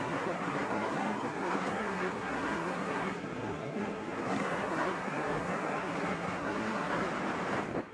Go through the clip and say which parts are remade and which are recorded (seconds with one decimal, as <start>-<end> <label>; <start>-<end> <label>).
0.0-7.1 remade; 7.1-7.9 recorded